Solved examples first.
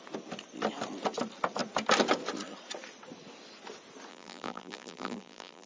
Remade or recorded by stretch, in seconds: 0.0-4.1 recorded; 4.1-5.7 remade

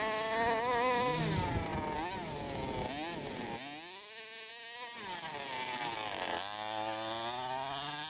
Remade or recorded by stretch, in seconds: 0.0-8.1 recorded

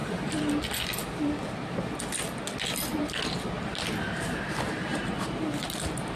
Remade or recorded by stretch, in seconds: 0.0-0.6 remade; 0.6-4.9 recorded; 4.9-5.4 remade; 5.4-6.2 recorded

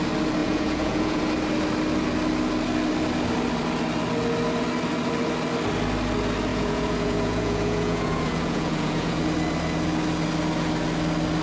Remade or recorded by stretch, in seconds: 0.0-0.4 recorded; 0.4-1.2 remade; 1.2-6.5 recorded; 6.5-9.2 remade; 9.2-11.4 recorded

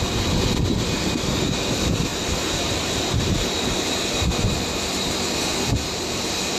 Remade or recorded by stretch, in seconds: 0.0-2.1 recorded; 2.1-3.5 remade; 3.5-6.6 recorded